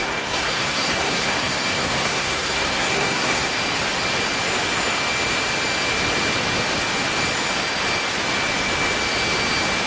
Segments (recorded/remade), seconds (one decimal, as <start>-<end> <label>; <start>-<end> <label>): 0.0-3.5 remade; 3.5-9.9 recorded